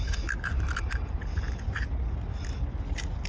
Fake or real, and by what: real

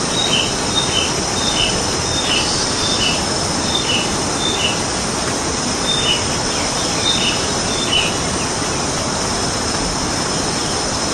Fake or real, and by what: real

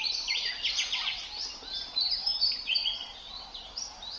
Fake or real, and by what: fake, vocoder, BigVGAN v2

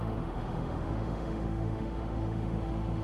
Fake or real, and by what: fake, autoencoder, DAC-VAE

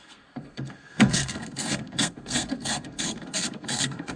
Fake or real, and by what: fake, codec, SNAC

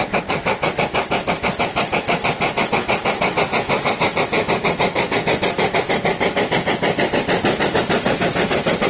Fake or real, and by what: real